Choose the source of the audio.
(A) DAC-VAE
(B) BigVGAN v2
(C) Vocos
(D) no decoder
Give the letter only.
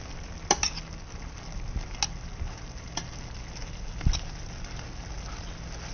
D